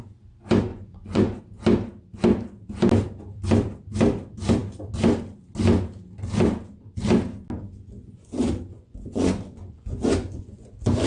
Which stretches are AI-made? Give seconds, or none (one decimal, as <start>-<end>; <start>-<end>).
0.7-1.4; 8.0-10.7